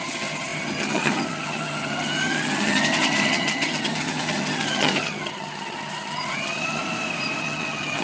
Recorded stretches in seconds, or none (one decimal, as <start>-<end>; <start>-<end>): 6.8-7.4